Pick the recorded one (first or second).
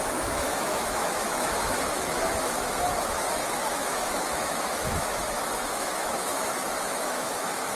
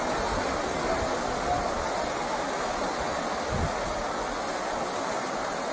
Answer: second